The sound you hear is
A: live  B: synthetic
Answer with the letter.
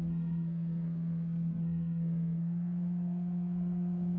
B